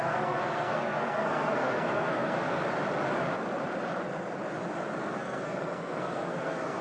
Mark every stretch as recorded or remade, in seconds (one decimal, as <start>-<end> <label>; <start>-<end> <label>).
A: 0.0-2.6 remade; 2.6-5.0 recorded; 5.0-6.8 remade